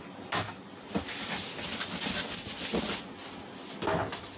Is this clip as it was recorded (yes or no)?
yes